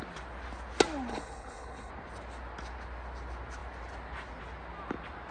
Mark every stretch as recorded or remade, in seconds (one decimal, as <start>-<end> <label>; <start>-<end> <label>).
0.0-1.1 recorded; 1.1-1.9 remade; 1.9-5.3 recorded